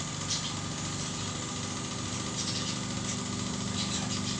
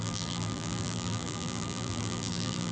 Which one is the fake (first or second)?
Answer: second